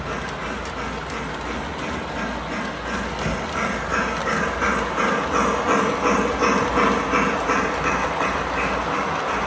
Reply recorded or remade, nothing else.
recorded